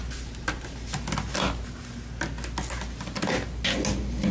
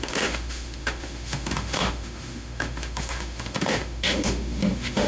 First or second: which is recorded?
first